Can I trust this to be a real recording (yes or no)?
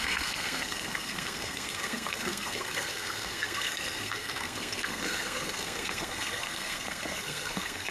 no